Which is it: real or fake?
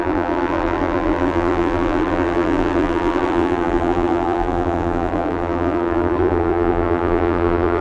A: fake